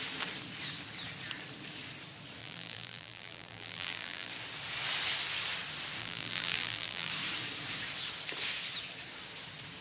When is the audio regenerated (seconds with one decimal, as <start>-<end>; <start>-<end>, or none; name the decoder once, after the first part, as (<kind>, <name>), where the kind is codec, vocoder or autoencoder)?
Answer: 2.4-4.3 (vocoder, BigVGAN v2); 6.0-7.1